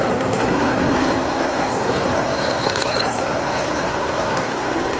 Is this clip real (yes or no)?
no